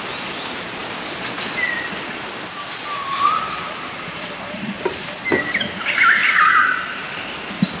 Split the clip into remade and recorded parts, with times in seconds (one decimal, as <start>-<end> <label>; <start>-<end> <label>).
0.0-0.8 recorded; 0.8-5.0 remade; 5.0-6.2 recorded; 6.2-7.2 remade; 7.2-7.8 recorded